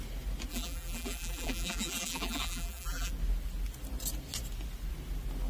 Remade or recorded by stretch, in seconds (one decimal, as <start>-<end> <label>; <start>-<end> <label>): 0.0-0.5 recorded; 0.5-3.1 remade; 3.1-5.5 recorded